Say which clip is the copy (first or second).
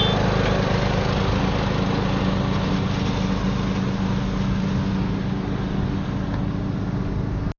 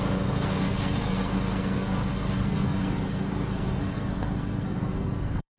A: second